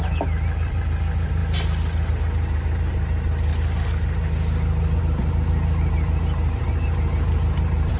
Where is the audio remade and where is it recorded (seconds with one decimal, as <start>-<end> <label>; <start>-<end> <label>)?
0.0-1.4 remade; 1.4-2.1 recorded; 2.1-3.5 remade; 3.5-5.0 recorded; 5.0-8.0 remade